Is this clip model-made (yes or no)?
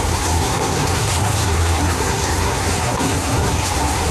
yes